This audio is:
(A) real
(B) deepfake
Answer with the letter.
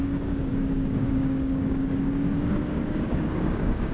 B